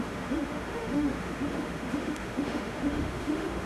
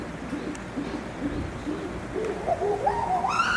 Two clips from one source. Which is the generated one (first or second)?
first